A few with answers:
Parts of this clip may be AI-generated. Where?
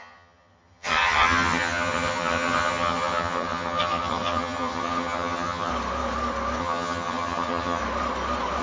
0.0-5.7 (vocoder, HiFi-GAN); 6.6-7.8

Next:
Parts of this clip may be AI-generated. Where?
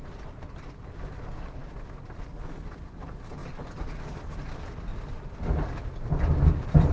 none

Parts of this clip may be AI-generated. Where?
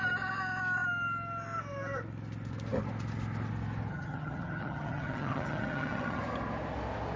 3.9-6.2 (vocoder, HiFi-GAN)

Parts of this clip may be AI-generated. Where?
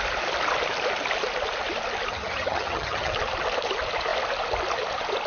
2.1-3.1 (vocoder, HiFi-GAN)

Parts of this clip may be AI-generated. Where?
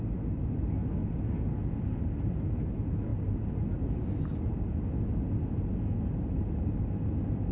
none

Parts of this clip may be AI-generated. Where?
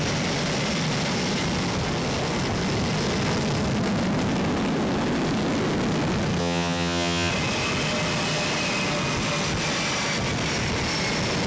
6.4-7.3 (vocoder, HiFi-GAN)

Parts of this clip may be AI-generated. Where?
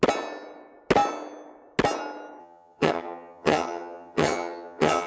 2.4-5.1 (vocoder, HiFi-GAN)